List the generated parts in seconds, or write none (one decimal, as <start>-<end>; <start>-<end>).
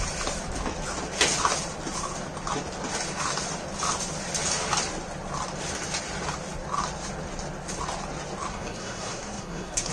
8.5-9.9